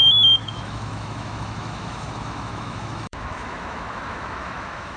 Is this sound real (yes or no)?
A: no